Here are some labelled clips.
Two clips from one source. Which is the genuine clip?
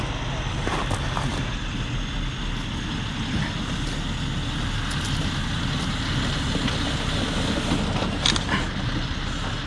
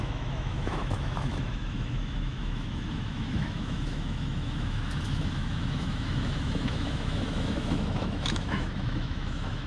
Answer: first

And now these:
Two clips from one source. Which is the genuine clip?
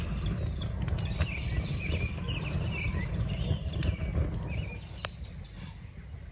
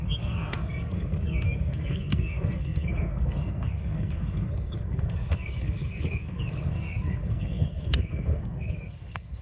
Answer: first